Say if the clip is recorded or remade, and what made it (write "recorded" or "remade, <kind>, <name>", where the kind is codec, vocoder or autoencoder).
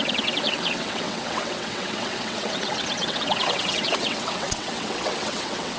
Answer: remade, vocoder, WaveNeXt